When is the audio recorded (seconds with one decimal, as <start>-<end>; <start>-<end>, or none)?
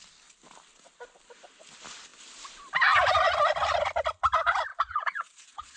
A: 0.0-4.7